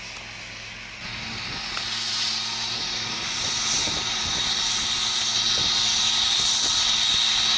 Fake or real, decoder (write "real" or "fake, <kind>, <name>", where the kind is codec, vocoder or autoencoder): real